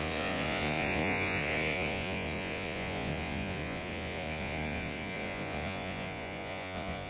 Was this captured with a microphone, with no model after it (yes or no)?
no